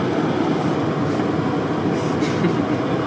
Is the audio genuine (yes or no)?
yes